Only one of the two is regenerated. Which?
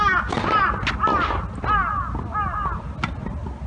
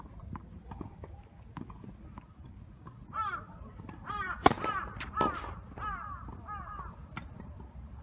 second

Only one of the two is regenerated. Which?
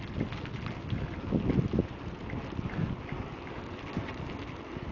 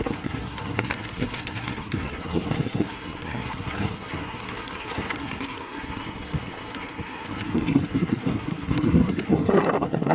second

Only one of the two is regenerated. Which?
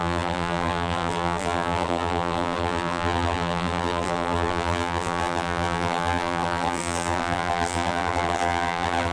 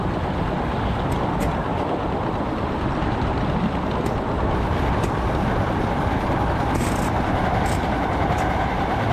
first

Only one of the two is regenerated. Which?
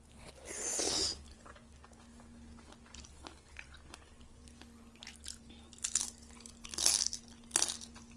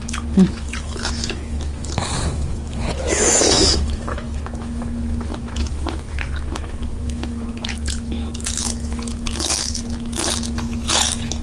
second